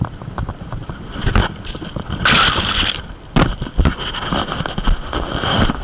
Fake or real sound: real